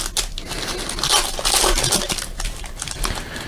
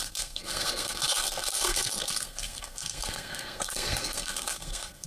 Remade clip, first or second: second